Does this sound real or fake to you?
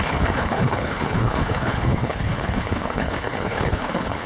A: fake